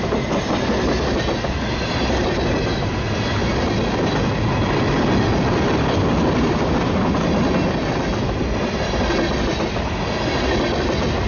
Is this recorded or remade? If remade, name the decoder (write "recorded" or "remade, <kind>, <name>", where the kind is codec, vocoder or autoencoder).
recorded